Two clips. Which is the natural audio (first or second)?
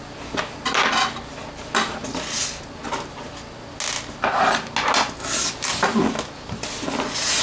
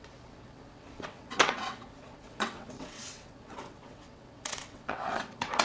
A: first